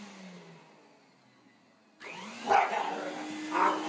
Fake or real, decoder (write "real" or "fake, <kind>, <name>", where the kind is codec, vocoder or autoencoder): real